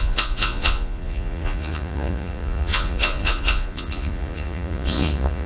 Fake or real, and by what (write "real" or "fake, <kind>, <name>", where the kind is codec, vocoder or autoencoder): fake, vocoder, Vocos